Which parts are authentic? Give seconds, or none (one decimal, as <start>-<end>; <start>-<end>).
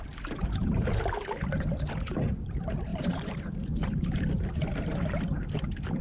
0.0-0.6; 1.2-2.9; 4.5-6.0